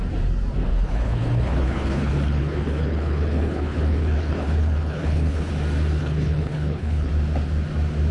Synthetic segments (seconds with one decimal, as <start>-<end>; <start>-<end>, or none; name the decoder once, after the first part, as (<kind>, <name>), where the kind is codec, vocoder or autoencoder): 0.7-5.5 (codec, HILCodec); 6.0-7.1